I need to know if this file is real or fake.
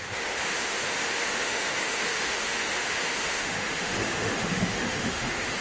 fake